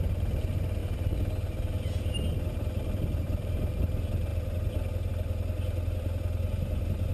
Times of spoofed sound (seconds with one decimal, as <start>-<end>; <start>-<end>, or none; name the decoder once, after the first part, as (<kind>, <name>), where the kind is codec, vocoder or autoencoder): none